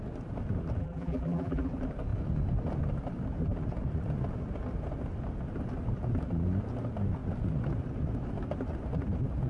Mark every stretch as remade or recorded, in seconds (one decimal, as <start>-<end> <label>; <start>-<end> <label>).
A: 0.0-0.8 recorded; 0.8-1.7 remade; 1.7-9.5 recorded